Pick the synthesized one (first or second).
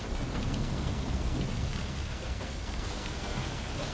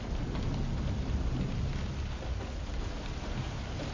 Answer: first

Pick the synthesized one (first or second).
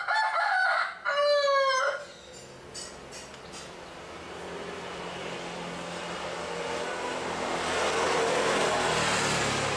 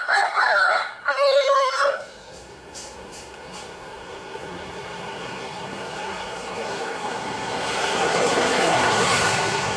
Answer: second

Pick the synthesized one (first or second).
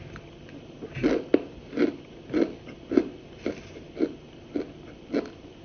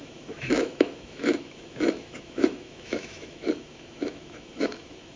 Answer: second